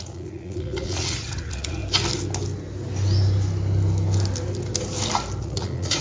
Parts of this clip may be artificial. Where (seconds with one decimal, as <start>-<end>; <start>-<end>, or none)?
0.0-1.8; 5.4-6.0